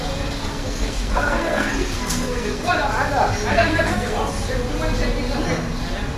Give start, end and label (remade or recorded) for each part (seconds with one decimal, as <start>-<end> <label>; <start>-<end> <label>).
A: 0.0-0.4 recorded; 0.4-2.7 remade; 2.7-3.5 recorded; 3.5-4.3 remade; 4.3-6.2 recorded